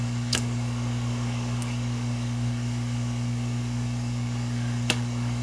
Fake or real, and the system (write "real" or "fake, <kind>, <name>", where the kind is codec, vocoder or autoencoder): fake, codec, DAC